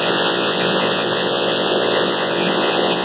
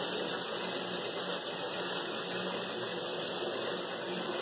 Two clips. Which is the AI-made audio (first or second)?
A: first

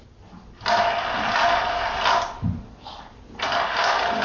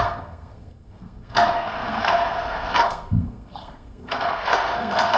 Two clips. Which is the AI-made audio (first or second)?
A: second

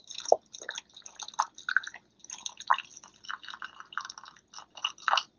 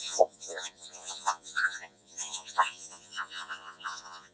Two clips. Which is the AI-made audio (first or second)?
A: second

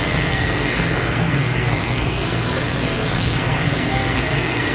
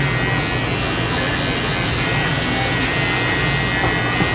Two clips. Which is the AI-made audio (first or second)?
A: first